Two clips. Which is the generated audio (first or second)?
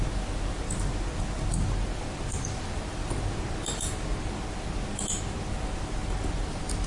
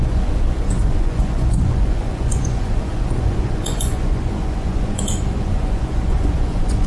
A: second